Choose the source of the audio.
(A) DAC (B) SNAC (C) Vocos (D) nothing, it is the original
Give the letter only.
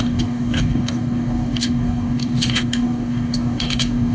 A